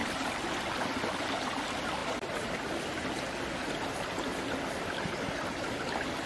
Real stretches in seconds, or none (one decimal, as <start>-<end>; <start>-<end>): 0.0-1.5; 2.0-5.8